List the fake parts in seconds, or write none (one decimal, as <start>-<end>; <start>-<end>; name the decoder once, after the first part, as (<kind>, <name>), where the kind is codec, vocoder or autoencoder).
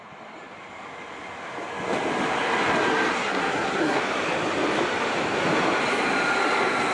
3.1-4.0 (codec, SNAC)